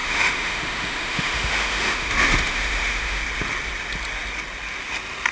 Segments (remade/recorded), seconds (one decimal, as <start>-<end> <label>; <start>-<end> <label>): 0.0-3.2 remade; 3.2-5.3 recorded

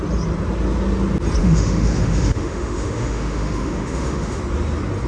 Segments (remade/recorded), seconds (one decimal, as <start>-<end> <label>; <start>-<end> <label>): 0.0-1.4 recorded; 1.4-4.4 remade; 4.4-5.1 recorded

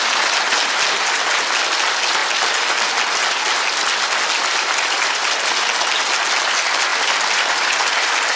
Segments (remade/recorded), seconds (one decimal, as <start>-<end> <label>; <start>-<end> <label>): 0.0-8.4 recorded

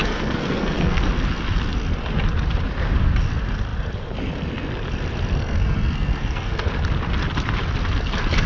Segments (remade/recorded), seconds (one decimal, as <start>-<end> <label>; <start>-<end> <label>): 0.0-1.0 remade; 1.0-5.4 recorded; 5.4-6.7 remade; 6.7-8.5 recorded

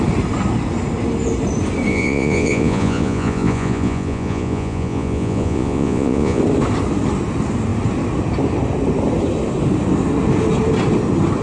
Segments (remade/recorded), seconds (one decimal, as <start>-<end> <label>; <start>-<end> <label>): 0.0-1.9 recorded; 1.9-6.4 remade; 6.4-11.4 recorded